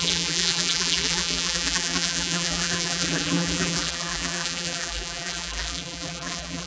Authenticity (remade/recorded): remade